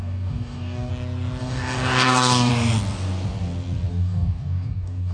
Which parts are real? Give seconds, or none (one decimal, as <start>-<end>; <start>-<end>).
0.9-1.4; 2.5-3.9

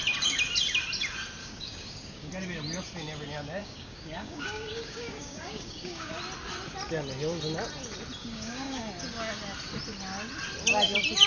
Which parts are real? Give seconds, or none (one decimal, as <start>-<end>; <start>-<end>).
0.0-1.4; 2.3-3.6; 6.1-8.2; 8.8-11.3

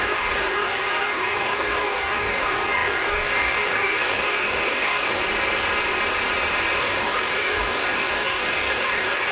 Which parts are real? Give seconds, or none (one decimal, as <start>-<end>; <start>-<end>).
5.2-6.8